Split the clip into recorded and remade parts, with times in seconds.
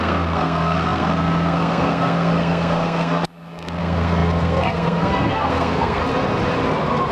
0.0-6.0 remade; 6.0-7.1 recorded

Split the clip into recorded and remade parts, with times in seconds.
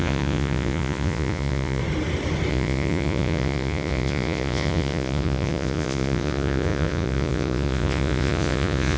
0.0-1.8 remade; 1.8-2.5 recorded; 2.5-9.0 remade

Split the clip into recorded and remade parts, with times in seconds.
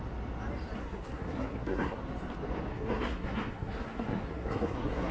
0.0-0.8 recorded; 0.8-2.0 remade; 2.0-2.7 recorded; 2.7-5.1 remade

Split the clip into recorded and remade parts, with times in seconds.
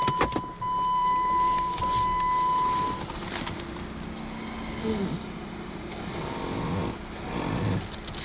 0.0-1.0 recorded; 1.0-1.8 remade; 1.8-5.0 recorded; 5.0-5.9 remade; 5.9-8.2 recorded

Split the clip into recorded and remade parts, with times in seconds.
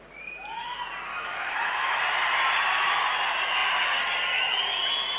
0.0-1.1 recorded; 1.1-2.0 remade; 2.0-5.2 recorded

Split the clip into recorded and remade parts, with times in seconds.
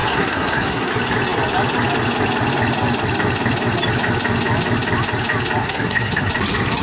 0.0-0.9 remade; 0.9-5.6 recorded; 5.6-6.3 remade; 6.3-6.8 recorded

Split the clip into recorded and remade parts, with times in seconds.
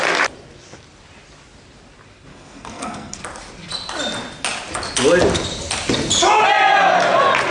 0.0-2.3 recorded; 2.3-3.2 remade; 3.2-7.5 recorded